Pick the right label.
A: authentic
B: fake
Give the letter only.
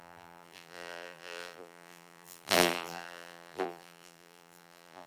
B